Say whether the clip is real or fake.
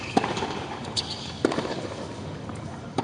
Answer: fake